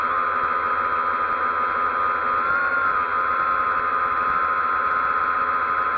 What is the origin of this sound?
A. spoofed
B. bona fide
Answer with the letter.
B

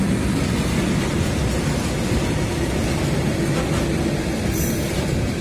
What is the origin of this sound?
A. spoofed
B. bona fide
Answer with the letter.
B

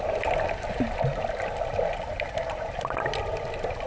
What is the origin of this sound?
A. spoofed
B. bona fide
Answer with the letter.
B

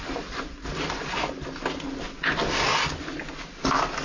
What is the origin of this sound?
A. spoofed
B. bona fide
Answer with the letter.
B